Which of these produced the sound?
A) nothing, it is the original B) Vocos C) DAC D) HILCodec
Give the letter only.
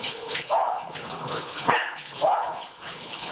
D